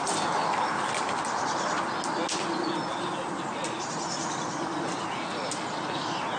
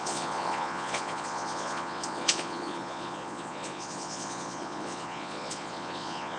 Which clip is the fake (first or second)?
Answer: second